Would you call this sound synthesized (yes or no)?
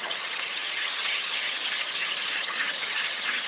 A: yes